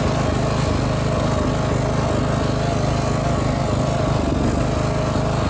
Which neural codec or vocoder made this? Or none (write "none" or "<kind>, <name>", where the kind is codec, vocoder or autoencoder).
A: none